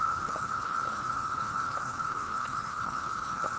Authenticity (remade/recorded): remade